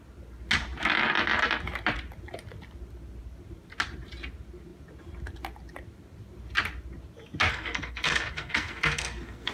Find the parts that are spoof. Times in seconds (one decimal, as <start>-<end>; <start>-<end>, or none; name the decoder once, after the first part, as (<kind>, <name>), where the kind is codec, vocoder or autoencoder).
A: 7.5-9.5 (codec, SNAC)